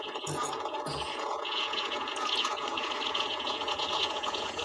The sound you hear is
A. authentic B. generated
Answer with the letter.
B